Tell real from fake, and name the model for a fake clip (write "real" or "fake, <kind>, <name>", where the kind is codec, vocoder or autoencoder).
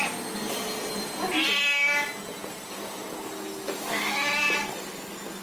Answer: real